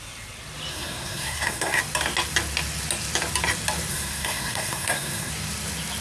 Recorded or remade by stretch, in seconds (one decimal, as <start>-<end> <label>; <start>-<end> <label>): 0.0-0.7 recorded; 0.7-1.8 remade; 1.8-3.9 recorded; 3.9-5.3 remade; 5.3-6.0 recorded